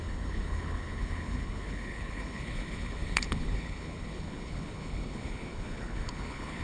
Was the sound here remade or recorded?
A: remade